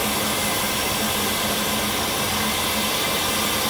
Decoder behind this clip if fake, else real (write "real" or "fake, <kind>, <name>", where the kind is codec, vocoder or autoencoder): real